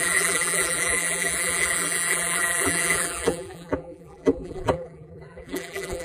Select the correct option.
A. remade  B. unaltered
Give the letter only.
A